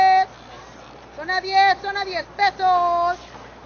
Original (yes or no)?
yes